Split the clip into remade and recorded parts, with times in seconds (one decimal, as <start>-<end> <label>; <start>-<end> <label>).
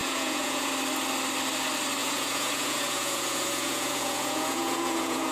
0.0-0.7 remade; 0.7-2.0 recorded; 2.0-5.3 remade